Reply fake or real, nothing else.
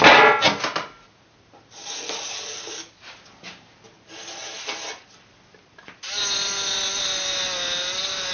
real